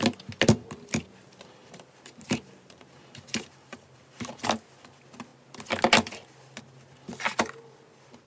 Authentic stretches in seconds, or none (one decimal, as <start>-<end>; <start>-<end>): 0.0-1.6; 4.3-8.3